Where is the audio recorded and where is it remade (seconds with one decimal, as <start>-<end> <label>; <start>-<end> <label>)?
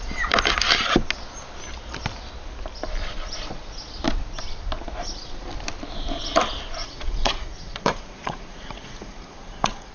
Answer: 0.0-6.8 recorded; 6.8-9.9 remade